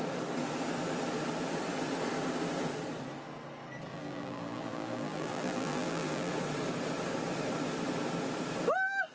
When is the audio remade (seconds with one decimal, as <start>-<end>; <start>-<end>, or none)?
3.9-6.3